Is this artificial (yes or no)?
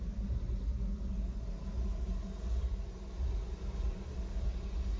no